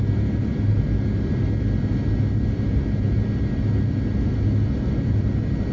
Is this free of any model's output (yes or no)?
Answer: no